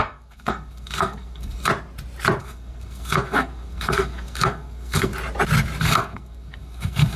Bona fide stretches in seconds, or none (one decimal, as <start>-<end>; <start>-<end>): 1.7-2.4; 5.1-5.8